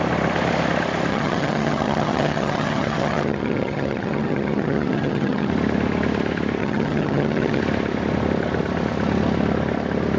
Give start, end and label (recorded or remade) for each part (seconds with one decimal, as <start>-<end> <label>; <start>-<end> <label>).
0.0-1.1 recorded; 1.1-5.5 remade; 5.5-6.6 recorded; 6.6-7.6 remade; 7.6-10.2 recorded